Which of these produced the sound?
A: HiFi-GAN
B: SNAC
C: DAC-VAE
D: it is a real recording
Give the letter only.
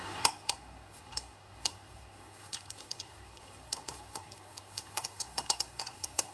B